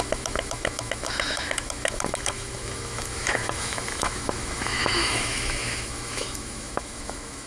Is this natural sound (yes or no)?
no